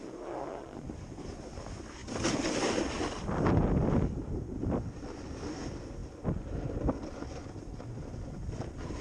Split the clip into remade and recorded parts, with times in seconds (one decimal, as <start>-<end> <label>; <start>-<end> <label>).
0.0-9.0 recorded

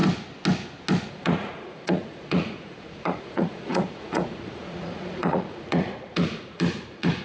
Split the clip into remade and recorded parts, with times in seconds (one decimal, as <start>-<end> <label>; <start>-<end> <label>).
0.0-1.1 recorded; 1.1-7.2 remade

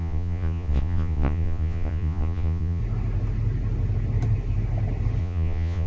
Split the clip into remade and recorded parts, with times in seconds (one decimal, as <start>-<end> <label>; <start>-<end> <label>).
0.0-2.8 remade; 2.8-5.2 recorded; 5.2-5.9 remade

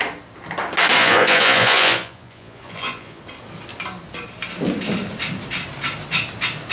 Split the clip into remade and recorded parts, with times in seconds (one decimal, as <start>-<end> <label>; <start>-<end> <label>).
0.0-1.0 recorded; 1.0-3.2 remade; 3.2-6.7 recorded